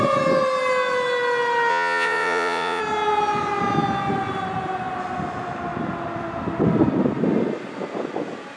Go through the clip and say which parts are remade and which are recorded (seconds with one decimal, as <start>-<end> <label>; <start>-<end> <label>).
0.0-1.7 recorded; 1.7-2.8 remade; 2.8-8.6 recorded